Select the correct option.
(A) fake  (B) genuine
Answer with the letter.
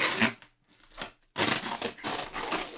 B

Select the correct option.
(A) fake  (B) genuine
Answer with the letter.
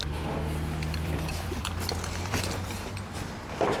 A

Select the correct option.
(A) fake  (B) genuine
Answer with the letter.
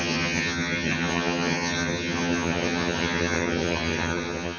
A